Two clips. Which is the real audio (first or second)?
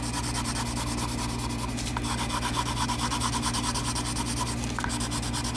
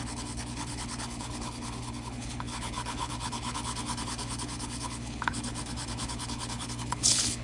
first